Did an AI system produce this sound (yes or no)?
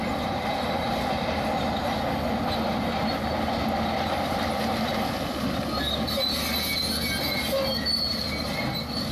no